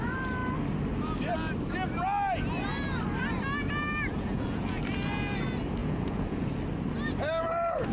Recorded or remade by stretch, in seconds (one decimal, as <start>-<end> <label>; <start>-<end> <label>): 0.0-4.1 recorded; 4.1-4.8 remade; 4.8-5.8 recorded; 5.8-6.5 remade; 6.5-7.9 recorded